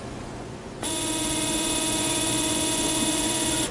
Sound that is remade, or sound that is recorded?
remade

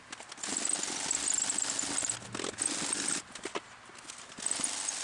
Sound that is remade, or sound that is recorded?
recorded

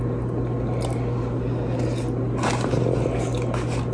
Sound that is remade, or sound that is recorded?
recorded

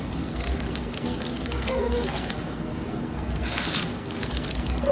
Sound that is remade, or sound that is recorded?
remade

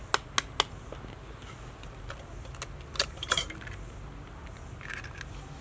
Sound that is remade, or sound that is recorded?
recorded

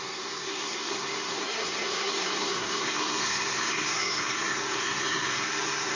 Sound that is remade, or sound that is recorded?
remade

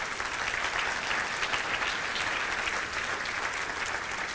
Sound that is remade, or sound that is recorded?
recorded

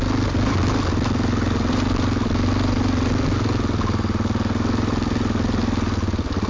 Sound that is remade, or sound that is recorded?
recorded